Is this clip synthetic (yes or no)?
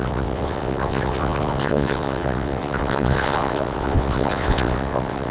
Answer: yes